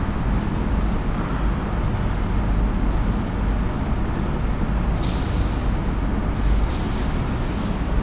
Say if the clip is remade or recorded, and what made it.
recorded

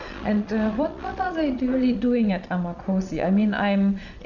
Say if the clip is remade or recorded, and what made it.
remade, vocoder, Vocos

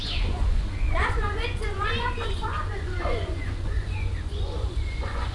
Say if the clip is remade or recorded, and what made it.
remade, vocoder, Vocos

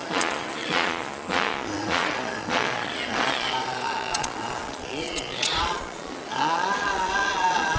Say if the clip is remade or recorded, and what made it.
remade, vocoder, Vocos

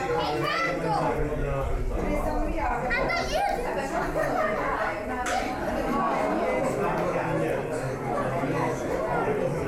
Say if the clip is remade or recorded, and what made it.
recorded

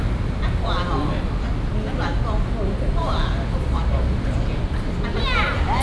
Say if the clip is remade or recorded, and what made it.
recorded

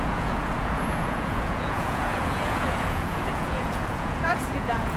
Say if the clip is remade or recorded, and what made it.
remade, vocoder, Vocos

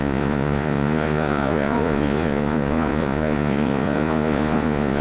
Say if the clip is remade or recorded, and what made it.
remade, vocoder, Vocos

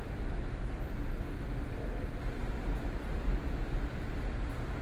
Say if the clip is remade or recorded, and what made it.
recorded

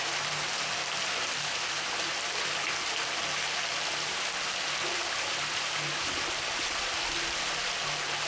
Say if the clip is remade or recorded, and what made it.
recorded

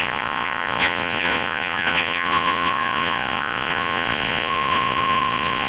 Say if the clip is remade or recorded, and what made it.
remade, vocoder, Vocos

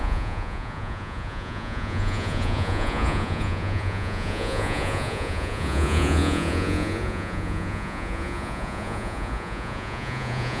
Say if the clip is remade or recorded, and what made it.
remade, vocoder, Vocos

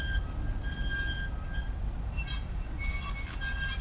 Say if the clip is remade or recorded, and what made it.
recorded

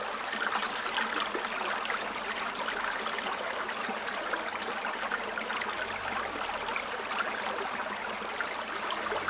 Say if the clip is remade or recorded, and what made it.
recorded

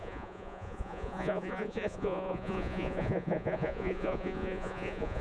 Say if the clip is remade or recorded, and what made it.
remade, vocoder, Vocos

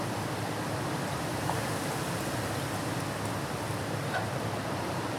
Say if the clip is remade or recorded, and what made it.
recorded